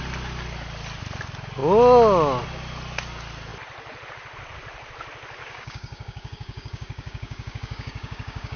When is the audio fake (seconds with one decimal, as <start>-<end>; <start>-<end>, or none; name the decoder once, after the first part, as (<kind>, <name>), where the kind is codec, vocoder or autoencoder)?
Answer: 5.4-8.6 (codec, DAC)